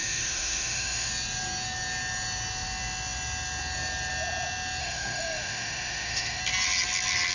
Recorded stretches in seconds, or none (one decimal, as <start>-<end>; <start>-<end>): 1.1-4.8; 6.4-7.3